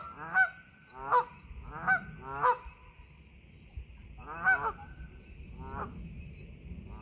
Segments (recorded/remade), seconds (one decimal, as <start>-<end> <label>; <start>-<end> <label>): 0.0-7.0 recorded